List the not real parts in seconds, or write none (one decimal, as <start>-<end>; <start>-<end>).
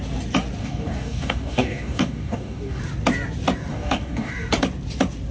0.6-2.8; 3.7-4.3